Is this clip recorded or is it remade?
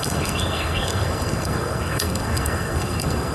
remade